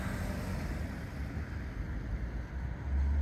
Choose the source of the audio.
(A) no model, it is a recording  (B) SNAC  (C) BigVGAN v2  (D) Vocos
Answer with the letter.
A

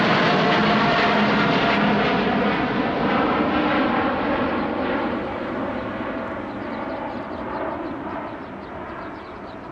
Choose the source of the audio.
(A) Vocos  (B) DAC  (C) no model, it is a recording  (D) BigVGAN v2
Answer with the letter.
C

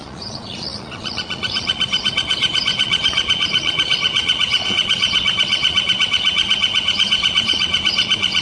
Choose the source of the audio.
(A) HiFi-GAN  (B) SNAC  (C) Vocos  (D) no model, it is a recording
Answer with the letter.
C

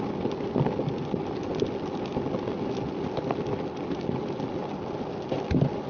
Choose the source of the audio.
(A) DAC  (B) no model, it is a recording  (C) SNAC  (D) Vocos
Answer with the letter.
B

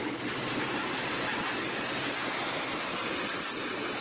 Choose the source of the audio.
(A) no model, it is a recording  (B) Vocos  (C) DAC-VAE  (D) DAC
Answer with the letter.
A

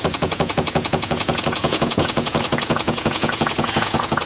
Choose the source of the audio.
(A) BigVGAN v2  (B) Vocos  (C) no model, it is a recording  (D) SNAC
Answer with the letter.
B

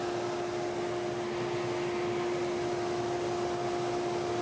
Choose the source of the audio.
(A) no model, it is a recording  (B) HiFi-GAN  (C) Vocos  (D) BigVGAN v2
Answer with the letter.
A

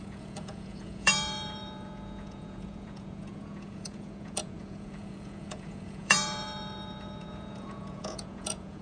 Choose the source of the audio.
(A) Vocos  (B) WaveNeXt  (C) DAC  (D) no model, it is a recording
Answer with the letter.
A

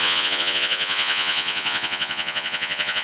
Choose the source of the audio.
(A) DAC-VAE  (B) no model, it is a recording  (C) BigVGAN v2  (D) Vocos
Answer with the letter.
D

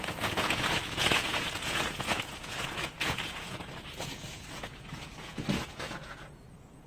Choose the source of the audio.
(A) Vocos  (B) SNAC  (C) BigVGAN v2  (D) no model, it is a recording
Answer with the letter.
A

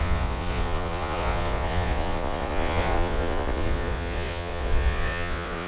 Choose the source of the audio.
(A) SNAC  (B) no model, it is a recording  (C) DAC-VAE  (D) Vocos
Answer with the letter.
D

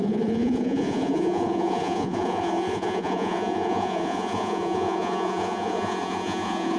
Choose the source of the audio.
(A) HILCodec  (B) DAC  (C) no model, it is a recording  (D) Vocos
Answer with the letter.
D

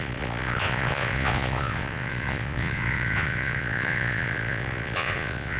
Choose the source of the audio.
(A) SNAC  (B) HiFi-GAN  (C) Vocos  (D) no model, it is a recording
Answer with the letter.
C